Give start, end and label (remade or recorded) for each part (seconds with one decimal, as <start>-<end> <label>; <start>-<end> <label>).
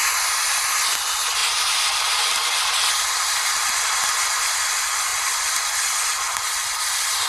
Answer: 0.0-7.3 recorded